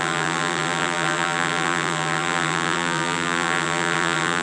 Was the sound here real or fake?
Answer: fake